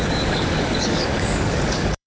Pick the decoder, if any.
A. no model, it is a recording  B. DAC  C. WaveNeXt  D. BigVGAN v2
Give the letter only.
B